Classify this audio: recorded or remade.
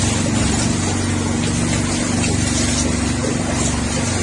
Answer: recorded